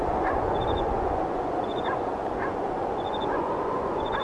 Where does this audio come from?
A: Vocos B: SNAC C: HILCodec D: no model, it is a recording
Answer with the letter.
A